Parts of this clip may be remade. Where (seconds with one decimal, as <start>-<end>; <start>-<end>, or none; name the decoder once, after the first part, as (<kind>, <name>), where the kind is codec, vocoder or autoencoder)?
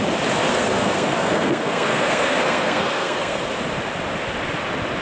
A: 0.5-3.5 (codec, SNAC)